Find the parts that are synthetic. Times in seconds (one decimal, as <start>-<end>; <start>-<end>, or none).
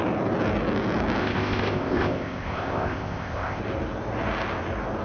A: 1.2-3.6